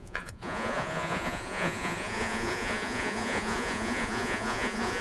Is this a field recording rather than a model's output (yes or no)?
no